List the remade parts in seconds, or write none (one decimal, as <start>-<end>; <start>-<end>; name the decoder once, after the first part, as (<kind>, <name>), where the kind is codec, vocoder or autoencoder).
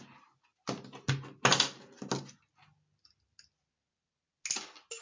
none